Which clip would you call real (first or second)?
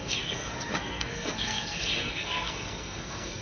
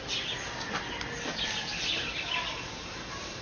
second